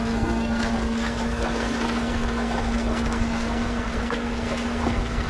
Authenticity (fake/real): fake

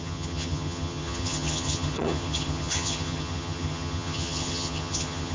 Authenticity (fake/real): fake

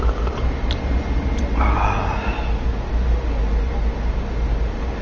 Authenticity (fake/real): real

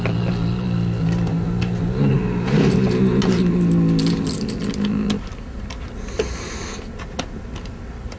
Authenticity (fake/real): real